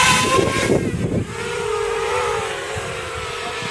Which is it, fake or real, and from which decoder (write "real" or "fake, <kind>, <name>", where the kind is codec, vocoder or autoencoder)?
fake, vocoder, BigVGAN v2